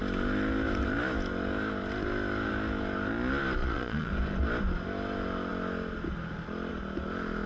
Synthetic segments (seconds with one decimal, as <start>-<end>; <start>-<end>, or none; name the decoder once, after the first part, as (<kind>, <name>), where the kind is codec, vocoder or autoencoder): 3.6-4.1 (vocoder, Vocos)